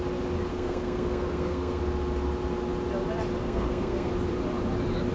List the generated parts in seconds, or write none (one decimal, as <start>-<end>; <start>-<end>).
0.5-1.8; 3.4-4.1